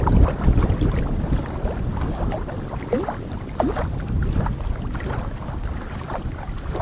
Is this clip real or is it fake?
real